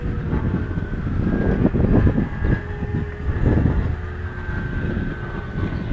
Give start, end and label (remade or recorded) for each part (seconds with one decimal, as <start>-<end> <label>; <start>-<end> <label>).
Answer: 0.0-5.9 recorded